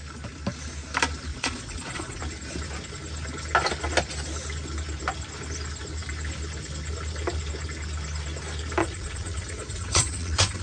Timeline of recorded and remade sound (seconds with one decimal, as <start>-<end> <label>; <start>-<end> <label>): 0.0-1.3 recorded; 1.3-2.2 remade; 2.2-8.8 recorded; 8.8-10.6 remade